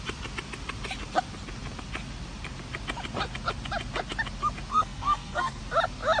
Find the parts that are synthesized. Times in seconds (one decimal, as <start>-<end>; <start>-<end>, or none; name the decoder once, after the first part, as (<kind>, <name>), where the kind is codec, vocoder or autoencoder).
4.7-5.6 (codec, SNAC)